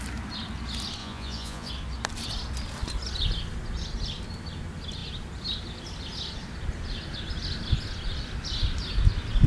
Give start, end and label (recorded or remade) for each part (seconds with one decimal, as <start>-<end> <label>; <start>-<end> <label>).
0.0-1.0 recorded; 1.0-1.7 remade; 1.7-9.5 recorded

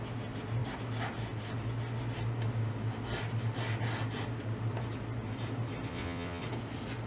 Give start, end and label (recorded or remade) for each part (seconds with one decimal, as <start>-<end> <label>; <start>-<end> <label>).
0.0-5.9 recorded; 5.9-6.4 remade; 6.4-7.1 recorded

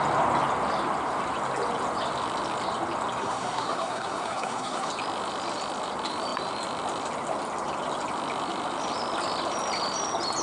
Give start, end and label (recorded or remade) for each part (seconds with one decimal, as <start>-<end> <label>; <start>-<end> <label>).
0.0-3.2 recorded; 3.2-4.9 remade; 4.9-10.4 recorded

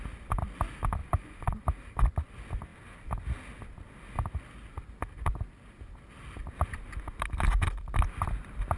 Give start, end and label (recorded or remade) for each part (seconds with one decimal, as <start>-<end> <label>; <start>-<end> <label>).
0.0-1.0 recorded; 1.0-1.6 remade; 1.6-8.8 recorded

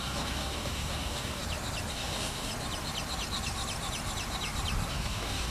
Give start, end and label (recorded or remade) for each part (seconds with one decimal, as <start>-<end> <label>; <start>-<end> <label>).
0.0-1.4 remade; 1.4-1.9 recorded; 1.9-2.5 remade; 2.5-4.9 recorded; 4.9-5.5 remade